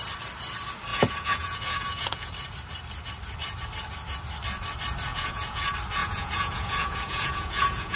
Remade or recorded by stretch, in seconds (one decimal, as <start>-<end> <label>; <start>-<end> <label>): 0.0-0.9 recorded; 0.9-2.3 remade; 2.3-5.1 recorded; 5.1-5.6 remade; 5.6-6.0 recorded; 6.0-8.0 remade